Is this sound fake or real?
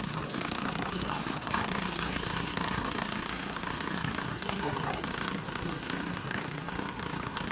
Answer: fake